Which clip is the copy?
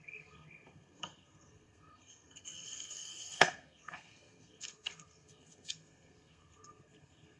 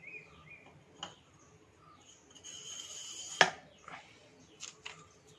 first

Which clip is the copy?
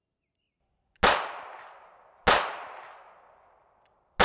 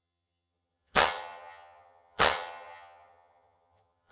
second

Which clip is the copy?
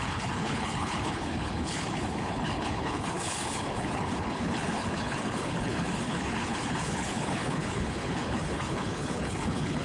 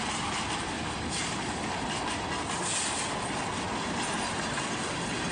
first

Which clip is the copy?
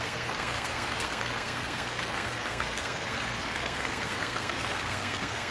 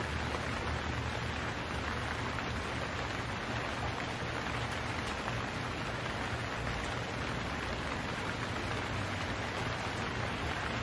first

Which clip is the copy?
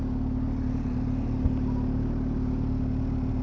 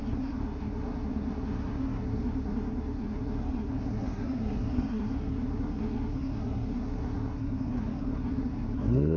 second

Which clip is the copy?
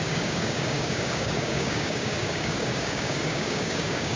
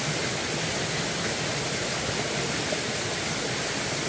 first